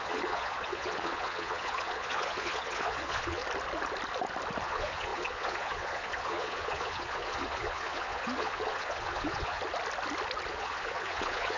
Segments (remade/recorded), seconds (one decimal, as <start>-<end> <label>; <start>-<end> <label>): 0.0-3.4 remade; 3.4-4.6 recorded; 4.6-9.6 remade; 9.6-10.5 recorded; 10.5-11.6 remade